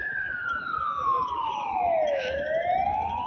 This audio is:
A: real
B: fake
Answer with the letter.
B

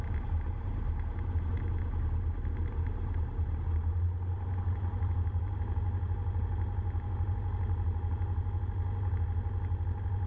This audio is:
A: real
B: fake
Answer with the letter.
A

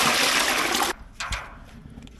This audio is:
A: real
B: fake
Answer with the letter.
A